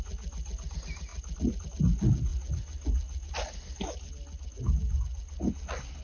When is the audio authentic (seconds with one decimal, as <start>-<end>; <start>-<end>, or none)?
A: 0.0-6.0